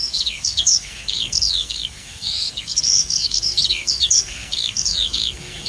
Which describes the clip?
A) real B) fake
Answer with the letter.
B